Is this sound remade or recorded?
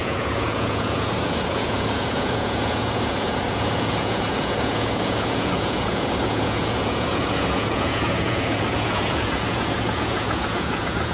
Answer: remade